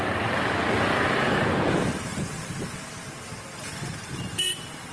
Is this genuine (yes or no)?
yes